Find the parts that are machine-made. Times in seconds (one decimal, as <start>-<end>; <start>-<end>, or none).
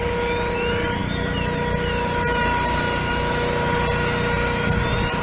none